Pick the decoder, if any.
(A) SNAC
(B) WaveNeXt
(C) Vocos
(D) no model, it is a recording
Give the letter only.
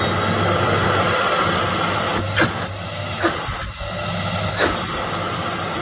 D